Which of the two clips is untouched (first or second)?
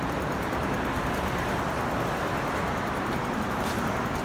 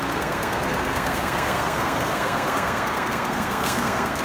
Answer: first